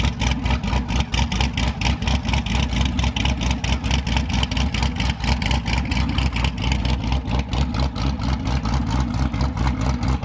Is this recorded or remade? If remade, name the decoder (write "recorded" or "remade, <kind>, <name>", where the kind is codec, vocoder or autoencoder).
recorded